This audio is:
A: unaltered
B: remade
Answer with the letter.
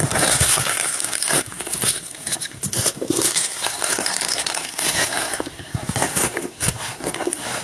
B